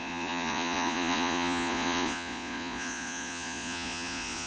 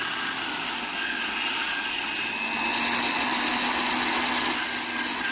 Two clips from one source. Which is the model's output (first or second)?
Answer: first